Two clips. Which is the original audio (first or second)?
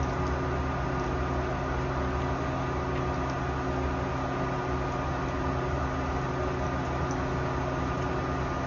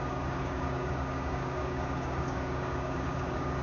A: first